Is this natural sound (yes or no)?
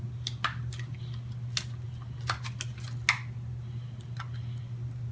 yes